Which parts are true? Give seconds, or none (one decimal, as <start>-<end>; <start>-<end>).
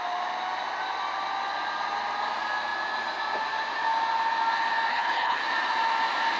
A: 0.0-4.9; 5.4-6.4